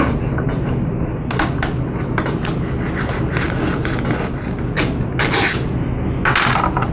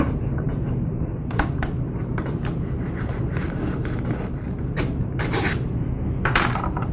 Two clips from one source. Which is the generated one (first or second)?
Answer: second